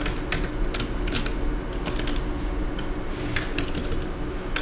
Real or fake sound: real